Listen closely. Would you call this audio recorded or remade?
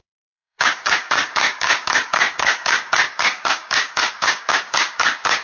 remade